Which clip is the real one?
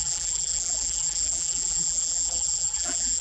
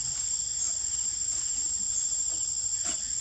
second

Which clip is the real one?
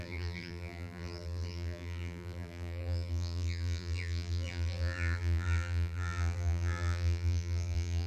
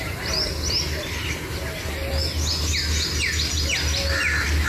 second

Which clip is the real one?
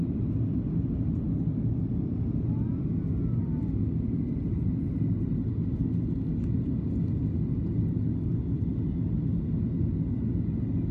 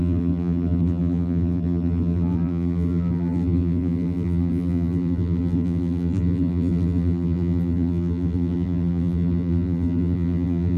first